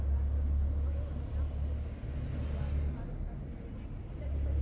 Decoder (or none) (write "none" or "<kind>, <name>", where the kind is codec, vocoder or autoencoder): none